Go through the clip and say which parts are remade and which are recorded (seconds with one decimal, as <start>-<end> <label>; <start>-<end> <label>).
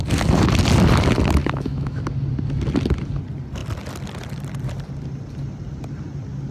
0.0-1.4 recorded; 1.4-2.0 remade; 2.0-6.5 recorded